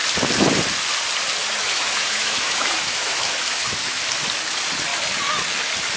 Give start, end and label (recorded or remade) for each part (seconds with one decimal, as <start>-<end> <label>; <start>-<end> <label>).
0.0-1.4 recorded; 1.4-4.0 remade; 4.0-6.0 recorded